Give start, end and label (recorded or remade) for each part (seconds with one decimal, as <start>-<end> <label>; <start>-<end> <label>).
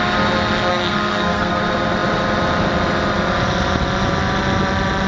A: 0.0-0.7 recorded; 0.7-1.6 remade; 1.6-5.1 recorded